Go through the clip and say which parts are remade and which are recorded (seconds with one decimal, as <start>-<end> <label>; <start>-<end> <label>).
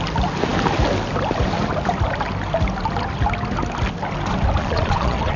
0.0-4.6 recorded; 4.6-5.4 remade